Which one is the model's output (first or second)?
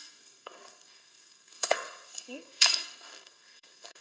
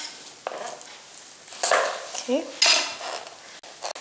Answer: first